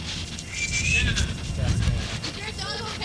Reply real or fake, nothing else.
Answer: real